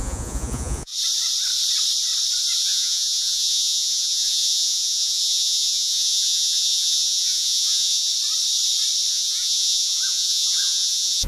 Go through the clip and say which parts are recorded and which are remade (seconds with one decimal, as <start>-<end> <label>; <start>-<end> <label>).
0.0-0.9 remade; 0.9-2.6 recorded; 2.6-8.1 remade; 8.1-9.1 recorded; 9.1-11.3 remade